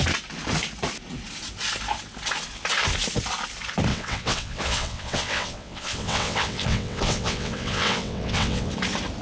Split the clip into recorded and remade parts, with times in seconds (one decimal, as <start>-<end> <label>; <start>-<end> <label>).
0.0-3.9 recorded; 3.9-8.7 remade; 8.7-9.2 recorded